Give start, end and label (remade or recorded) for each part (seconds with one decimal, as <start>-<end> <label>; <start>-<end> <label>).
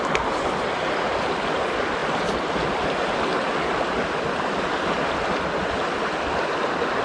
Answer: 0.0-7.0 recorded